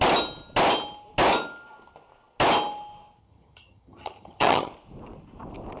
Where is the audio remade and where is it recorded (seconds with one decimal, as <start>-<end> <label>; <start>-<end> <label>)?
0.0-3.2 recorded; 3.2-4.7 remade; 4.7-5.8 recorded